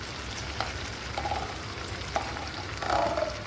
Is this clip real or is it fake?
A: real